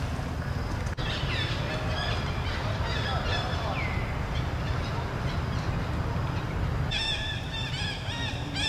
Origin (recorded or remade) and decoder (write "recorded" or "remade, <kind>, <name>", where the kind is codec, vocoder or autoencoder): recorded